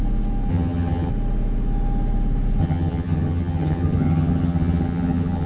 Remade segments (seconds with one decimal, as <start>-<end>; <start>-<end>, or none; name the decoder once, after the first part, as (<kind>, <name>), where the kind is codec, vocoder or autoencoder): 0.5-1.1 (vocoder, HiFi-GAN); 2.6-5.5